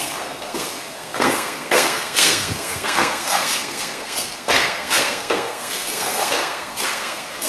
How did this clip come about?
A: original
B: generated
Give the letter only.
B